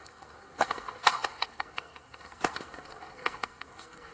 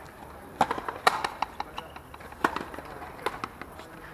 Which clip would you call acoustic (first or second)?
second